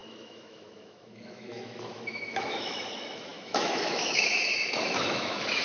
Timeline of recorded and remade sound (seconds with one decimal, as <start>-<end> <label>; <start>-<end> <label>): 0.0-5.6 remade